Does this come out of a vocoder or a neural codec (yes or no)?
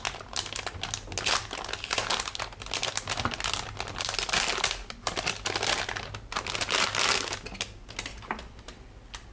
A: no